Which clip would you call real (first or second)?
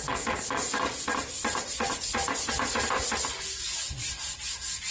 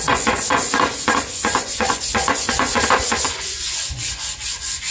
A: first